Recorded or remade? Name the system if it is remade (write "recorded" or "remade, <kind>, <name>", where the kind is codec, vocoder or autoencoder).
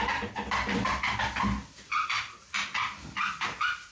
recorded